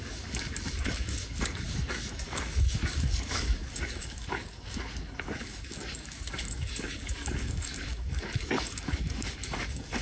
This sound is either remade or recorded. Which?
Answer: remade